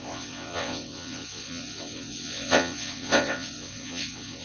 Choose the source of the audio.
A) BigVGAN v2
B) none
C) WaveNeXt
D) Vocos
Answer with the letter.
C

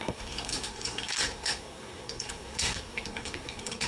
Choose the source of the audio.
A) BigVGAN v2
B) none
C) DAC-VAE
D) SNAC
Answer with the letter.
D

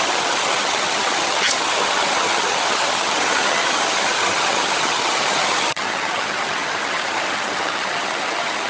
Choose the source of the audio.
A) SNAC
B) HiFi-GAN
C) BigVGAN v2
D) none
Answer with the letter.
B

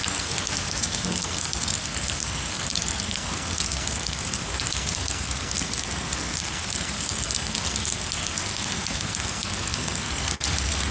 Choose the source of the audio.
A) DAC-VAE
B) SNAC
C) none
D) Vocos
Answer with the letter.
B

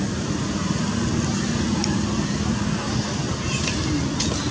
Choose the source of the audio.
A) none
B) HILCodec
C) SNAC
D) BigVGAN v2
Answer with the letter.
A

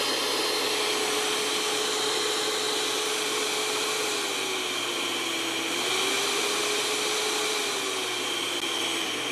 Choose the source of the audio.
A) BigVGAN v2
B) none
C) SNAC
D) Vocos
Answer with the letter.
B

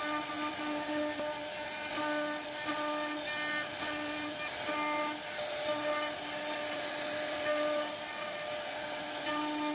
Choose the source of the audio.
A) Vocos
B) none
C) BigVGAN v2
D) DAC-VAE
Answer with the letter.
B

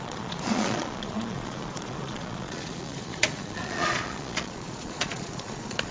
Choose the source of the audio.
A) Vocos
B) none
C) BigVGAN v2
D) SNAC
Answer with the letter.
A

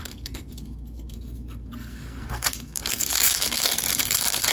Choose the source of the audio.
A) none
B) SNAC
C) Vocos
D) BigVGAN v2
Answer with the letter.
B